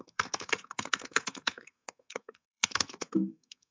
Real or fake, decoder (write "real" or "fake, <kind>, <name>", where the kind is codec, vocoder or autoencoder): fake, codec, SNAC